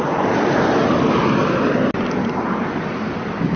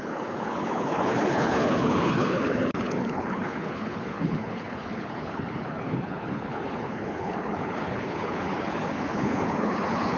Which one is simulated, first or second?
second